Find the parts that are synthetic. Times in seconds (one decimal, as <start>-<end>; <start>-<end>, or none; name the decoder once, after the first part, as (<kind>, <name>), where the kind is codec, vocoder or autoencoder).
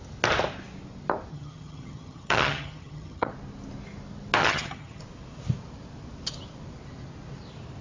1.3-3.3 (vocoder, HiFi-GAN); 4.4-5.0